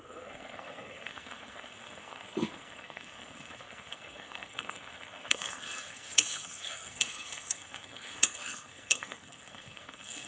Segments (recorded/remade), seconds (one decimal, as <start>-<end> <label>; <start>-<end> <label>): 0.0-10.3 remade